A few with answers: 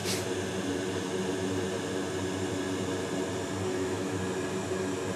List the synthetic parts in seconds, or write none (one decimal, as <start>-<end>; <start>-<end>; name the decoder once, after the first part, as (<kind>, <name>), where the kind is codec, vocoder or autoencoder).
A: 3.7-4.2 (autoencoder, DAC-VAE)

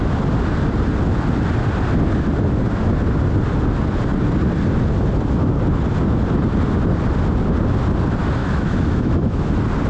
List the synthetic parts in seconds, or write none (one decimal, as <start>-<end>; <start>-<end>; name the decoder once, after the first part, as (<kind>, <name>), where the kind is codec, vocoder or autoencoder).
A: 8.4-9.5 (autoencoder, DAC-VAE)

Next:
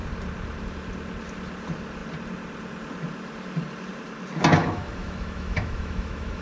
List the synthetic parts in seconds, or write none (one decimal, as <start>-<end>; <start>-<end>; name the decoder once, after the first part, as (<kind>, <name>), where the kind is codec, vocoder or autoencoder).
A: 4.6-6.4 (autoencoder, DAC-VAE)

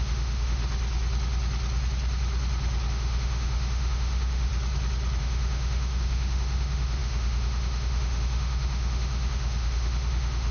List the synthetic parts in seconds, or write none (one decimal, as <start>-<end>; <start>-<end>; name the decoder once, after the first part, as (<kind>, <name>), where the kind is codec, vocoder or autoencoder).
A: 0.0-0.6 (autoencoder, DAC-VAE); 2.9-4.5; 5.2-10.5

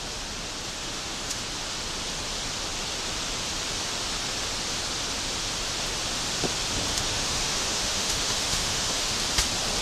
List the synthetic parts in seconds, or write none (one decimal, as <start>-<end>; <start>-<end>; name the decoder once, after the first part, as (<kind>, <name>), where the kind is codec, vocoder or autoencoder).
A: 0.8-1.4 (autoencoder, DAC-VAE); 6.9-9.2

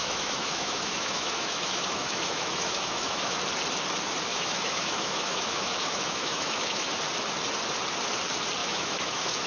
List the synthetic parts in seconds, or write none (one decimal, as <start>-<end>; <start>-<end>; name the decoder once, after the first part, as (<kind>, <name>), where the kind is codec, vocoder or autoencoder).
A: 0.0-3.4 (autoencoder, DAC-VAE); 4.3-6.9; 8.6-9.5

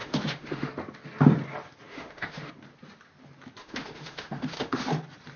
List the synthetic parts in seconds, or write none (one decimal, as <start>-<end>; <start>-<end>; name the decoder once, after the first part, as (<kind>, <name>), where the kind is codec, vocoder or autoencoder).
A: 0.0-0.7 (autoencoder, DAC-VAE); 1.9-2.5; 3.6-4.9

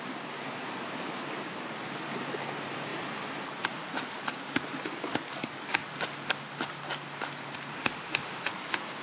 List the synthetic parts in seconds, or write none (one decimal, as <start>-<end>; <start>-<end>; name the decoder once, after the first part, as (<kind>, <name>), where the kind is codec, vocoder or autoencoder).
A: 7.7-8.5 (autoencoder, DAC-VAE)